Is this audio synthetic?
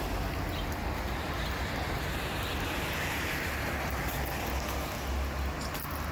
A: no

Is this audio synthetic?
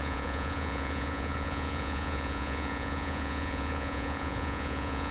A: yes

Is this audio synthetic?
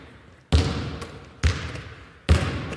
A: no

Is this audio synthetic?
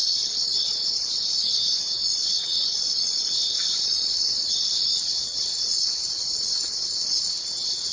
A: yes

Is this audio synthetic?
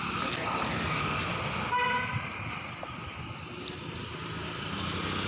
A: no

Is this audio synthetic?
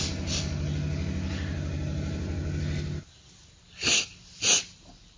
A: no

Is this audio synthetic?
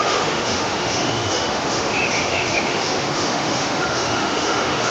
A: yes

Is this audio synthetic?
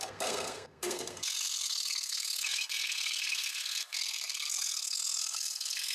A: yes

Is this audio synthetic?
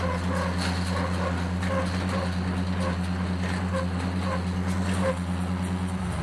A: no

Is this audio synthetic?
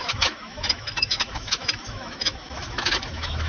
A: yes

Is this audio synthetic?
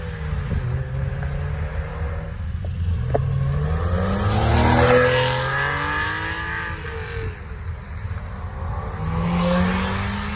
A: no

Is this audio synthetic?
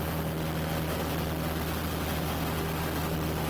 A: no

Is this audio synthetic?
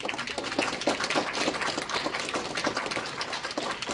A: no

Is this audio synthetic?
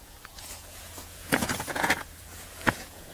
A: yes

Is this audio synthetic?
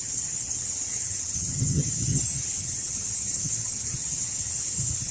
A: yes